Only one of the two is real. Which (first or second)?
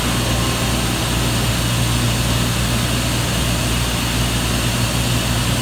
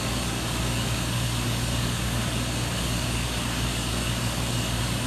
first